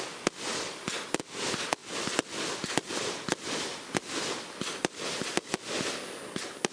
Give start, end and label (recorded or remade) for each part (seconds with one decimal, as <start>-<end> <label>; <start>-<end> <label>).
0.0-6.7 recorded